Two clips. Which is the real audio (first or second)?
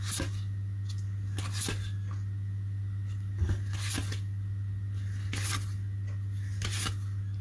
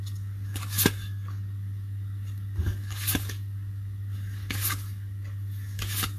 first